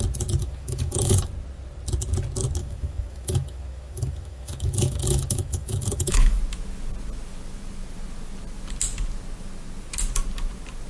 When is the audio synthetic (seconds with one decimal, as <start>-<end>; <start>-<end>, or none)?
0.4-1.3; 2.6-6.4